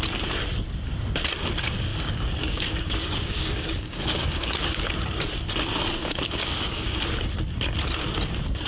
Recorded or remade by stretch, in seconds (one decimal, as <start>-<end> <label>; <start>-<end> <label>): 0.0-1.9 recorded; 1.9-4.9 remade; 4.9-6.0 recorded; 6.0-7.0 remade; 7.0-8.7 recorded